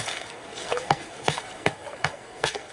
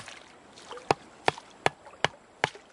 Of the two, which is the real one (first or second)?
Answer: second